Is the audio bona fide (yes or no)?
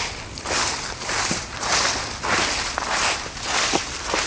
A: yes